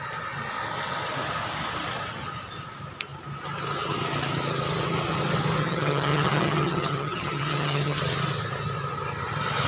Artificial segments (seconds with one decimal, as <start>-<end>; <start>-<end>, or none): 5.6-8.0